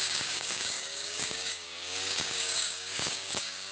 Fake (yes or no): yes